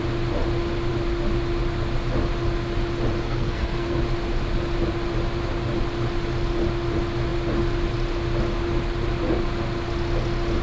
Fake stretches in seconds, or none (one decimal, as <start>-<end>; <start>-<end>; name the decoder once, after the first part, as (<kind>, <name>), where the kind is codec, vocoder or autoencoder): 3.2-4.0 (codec, SNAC)